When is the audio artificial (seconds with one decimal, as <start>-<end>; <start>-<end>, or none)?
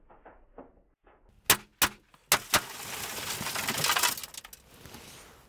none